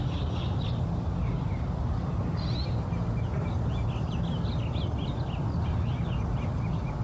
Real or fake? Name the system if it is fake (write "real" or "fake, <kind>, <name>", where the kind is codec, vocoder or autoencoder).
real